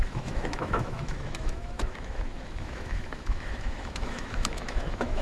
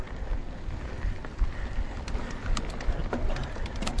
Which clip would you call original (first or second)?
second